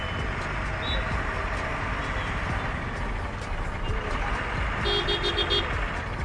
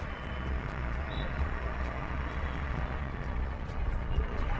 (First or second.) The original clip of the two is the first